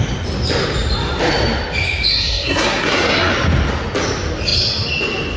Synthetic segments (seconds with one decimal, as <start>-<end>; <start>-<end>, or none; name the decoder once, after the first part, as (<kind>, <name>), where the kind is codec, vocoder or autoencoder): 2.1-3.3 (codec, SNAC)

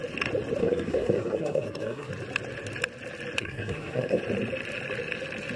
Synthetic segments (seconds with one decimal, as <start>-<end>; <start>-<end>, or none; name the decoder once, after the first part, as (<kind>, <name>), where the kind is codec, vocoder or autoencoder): 0.6-2.1 (codec, SNAC); 3.4-4.2

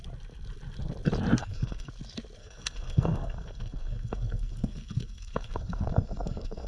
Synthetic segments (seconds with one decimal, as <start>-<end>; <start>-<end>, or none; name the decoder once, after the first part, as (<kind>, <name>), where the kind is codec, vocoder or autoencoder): 1.4-1.9 (codec, SNAC); 2.4-6.7

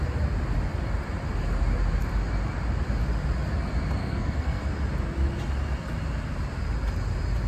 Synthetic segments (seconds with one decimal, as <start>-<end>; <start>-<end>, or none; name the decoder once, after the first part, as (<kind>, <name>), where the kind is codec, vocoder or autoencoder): 4.0-4.6 (codec, SNAC)

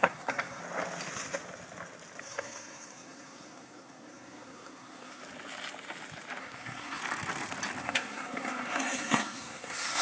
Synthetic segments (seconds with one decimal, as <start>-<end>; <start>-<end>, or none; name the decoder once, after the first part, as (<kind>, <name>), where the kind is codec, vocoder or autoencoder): 0.0-0.6 (codec, SNAC); 2.2-5.2; 6.4-7.0; 7.8-10.0

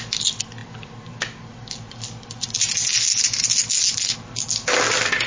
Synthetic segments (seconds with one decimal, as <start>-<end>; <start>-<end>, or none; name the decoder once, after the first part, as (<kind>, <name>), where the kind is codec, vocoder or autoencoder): none

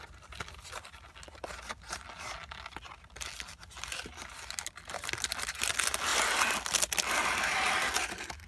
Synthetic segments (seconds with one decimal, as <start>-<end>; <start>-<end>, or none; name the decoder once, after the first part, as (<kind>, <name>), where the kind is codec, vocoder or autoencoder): none

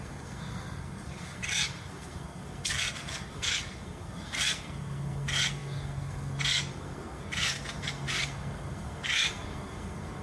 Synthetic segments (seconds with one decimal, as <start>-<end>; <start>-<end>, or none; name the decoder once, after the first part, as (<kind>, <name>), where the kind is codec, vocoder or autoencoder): 0.0-10.2 (codec, SNAC)